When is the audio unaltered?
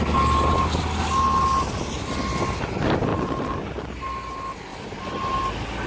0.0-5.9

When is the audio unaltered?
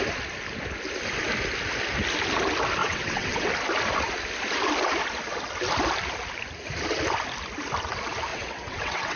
0.0-2.8; 3.5-8.3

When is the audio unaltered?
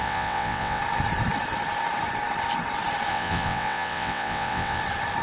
0.8-3.1; 4.8-5.2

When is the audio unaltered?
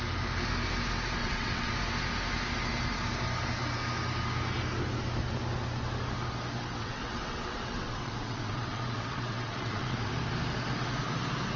0.0-1.2; 1.7-6.8; 10.1-11.6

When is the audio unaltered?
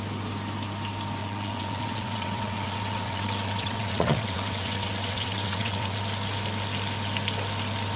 0.0-1.2; 6.0-8.0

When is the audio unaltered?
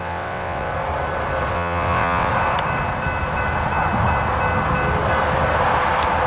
0.7-1.5; 2.3-6.3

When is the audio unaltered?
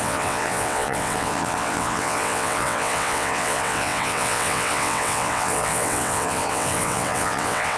none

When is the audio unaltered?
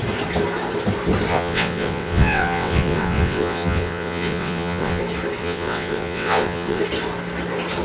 0.0-1.3; 5.0-5.4; 6.8-7.8